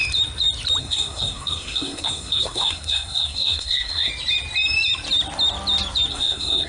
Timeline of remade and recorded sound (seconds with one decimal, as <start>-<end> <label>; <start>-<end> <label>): 0.0-0.8 recorded; 0.8-4.1 remade; 4.1-6.1 recorded; 6.1-6.7 remade